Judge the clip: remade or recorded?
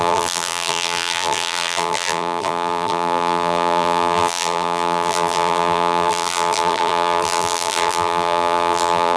remade